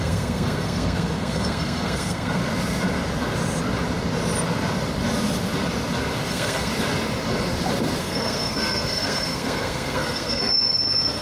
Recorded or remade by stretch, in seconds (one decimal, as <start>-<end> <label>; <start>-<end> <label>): 0.0-2.4 remade; 2.4-6.3 recorded; 6.3-6.7 remade; 6.7-8.0 recorded; 8.0-11.2 remade